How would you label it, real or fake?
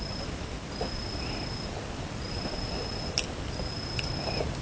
real